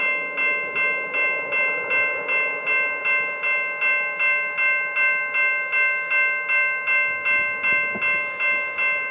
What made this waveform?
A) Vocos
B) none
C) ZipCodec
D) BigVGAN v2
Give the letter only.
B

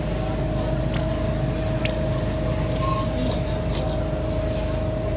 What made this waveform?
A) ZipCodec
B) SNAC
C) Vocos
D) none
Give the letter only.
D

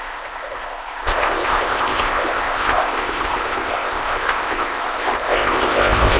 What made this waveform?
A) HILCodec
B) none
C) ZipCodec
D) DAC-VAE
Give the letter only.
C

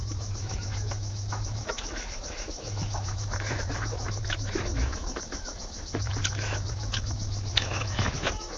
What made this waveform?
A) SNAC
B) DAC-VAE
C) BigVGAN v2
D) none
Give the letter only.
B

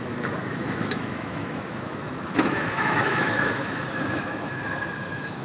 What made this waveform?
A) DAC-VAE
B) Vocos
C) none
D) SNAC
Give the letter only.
A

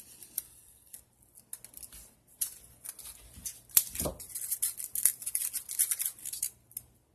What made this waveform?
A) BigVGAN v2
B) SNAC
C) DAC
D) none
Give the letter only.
D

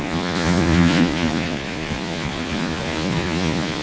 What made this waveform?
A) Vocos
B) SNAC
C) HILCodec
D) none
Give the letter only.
A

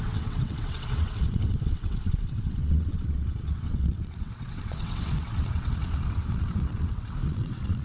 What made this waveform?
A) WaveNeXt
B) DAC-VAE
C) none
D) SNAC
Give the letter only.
A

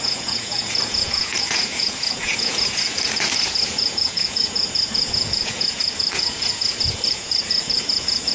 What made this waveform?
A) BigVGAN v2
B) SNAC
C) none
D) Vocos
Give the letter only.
D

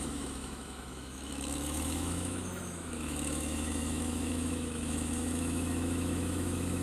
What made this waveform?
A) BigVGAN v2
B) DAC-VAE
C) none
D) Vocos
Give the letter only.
B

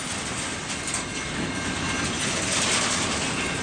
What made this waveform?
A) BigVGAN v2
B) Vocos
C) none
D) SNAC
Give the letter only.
C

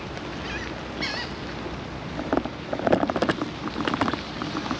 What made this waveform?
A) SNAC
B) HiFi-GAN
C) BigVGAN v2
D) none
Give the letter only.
D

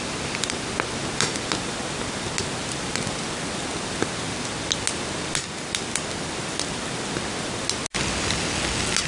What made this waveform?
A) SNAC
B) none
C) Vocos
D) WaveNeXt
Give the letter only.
B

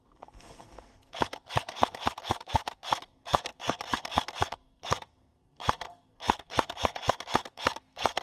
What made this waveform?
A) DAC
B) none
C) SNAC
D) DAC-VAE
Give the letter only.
C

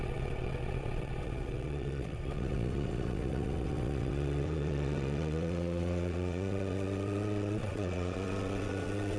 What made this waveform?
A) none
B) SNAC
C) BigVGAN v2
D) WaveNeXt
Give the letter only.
D